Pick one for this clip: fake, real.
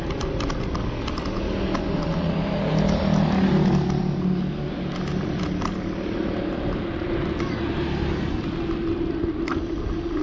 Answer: real